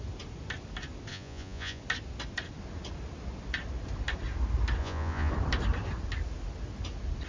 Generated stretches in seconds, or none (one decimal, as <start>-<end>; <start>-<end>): 1.1-1.8; 4.8-5.3